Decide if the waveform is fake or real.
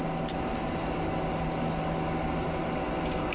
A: real